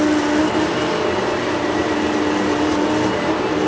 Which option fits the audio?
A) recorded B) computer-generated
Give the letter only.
A